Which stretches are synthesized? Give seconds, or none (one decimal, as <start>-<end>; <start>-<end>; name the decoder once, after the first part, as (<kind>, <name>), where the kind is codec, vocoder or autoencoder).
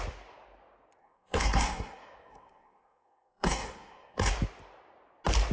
1.0-4.3 (codec, SNAC)